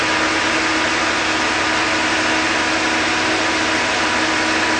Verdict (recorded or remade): recorded